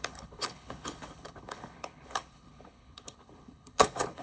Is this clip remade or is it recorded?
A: remade